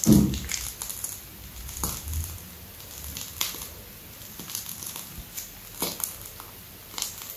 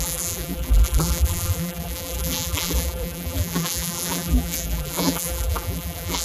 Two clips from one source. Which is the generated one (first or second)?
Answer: second